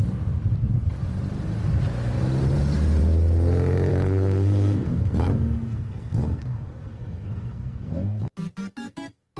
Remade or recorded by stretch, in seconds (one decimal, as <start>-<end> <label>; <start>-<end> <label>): 0.0-3.9 recorded; 3.9-9.4 remade